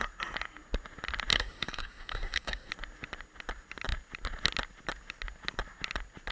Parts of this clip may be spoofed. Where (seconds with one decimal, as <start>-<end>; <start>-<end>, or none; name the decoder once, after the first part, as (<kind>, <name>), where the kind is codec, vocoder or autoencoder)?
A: 1.3-2.7 (codec, SNAC)